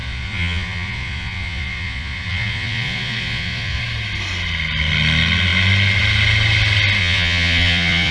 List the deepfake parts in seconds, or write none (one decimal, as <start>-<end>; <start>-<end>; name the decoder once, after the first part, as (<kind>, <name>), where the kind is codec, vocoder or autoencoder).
0.0-3.8 (vocoder, Vocos); 7.0-8.1